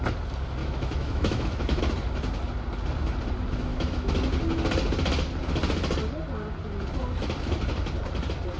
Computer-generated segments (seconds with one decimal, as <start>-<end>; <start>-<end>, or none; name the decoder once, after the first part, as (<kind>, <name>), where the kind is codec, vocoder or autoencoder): 0.6-1.8 (autoencoder, DAC-VAE); 3.7-4.2